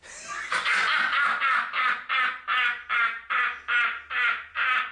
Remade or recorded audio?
recorded